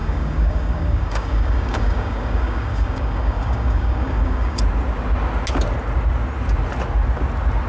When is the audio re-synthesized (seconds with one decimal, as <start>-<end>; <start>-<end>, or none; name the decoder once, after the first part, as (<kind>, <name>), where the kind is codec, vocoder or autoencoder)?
0.0-4.6 (codec, DAC)